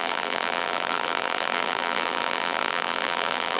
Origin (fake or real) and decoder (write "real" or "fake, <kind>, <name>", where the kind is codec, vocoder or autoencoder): fake, vocoder, BigVGAN v2